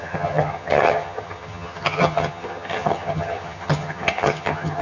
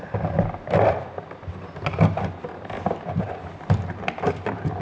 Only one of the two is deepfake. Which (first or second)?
first